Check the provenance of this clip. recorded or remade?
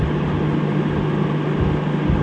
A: recorded